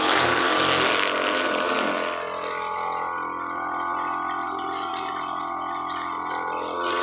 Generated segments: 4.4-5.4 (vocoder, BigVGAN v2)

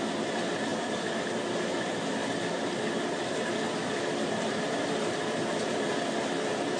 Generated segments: 0.0-2.2 (vocoder, BigVGAN v2); 2.9-6.8